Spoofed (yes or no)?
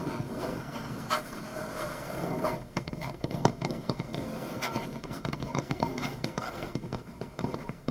yes